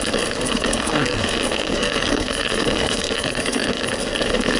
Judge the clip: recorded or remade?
remade